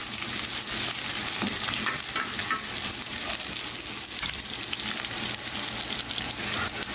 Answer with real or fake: real